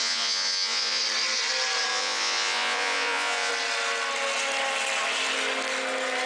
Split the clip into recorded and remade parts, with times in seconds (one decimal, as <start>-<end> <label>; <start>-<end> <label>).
0.0-1.0 remade; 1.0-1.9 recorded; 1.9-3.5 remade; 3.5-6.3 recorded